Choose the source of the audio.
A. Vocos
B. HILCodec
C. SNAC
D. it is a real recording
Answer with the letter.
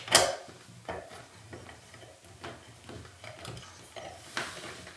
D